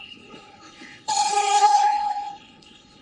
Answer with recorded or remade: remade